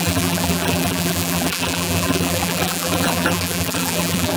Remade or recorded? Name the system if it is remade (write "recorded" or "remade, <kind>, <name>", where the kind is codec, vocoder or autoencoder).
remade, vocoder, BigVGAN v2